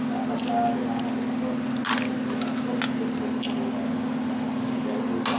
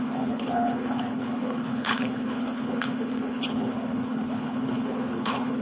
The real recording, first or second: first